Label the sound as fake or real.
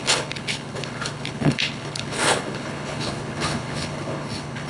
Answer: fake